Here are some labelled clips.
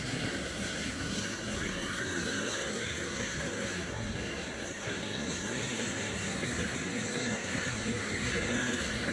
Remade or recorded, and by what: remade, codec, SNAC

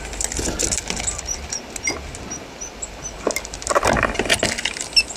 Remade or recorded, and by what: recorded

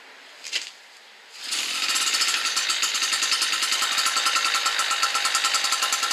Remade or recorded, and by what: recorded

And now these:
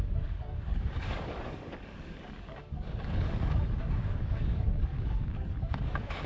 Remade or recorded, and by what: remade, codec, DAC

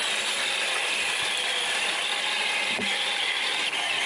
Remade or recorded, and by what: recorded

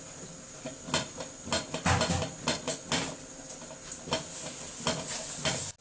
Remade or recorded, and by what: recorded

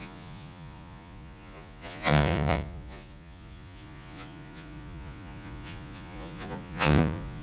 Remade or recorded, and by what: remade, vocoder, Vocos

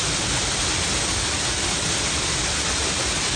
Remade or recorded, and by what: recorded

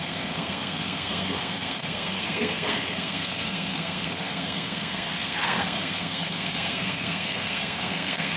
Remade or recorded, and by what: remade, codec, SNAC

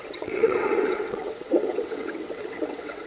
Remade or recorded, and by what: remade, vocoder, WaveNeXt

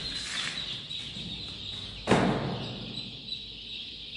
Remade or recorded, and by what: recorded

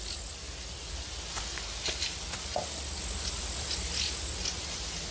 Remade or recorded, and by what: recorded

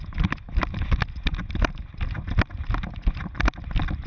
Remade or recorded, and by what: recorded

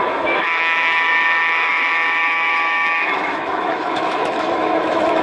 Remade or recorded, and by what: remade, autoencoder, DAC-VAE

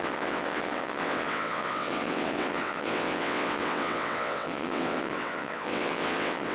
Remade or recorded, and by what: remade, vocoder, WaveNeXt